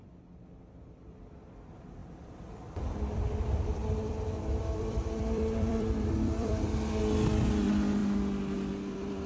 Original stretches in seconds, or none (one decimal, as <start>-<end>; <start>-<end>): 0.0-2.0; 7.0-9.3